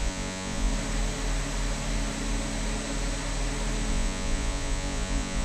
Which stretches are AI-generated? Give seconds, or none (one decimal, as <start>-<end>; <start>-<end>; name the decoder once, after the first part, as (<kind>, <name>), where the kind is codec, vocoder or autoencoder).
0.0-0.7 (vocoder, Vocos); 3.9-5.4